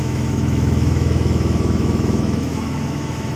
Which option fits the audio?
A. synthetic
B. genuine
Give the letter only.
A